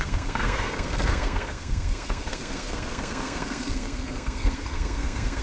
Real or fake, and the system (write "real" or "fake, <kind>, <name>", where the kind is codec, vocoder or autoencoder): fake, codec, SNAC